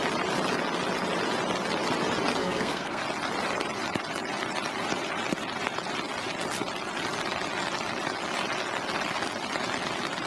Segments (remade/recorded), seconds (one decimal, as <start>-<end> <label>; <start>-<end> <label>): 0.0-2.4 recorded; 2.4-3.0 remade; 3.0-10.3 recorded